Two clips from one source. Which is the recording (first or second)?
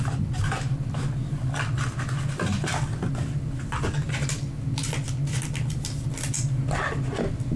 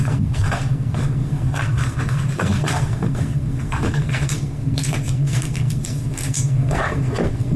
first